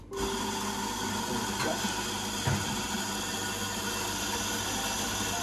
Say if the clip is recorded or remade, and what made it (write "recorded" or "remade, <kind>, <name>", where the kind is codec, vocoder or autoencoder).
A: recorded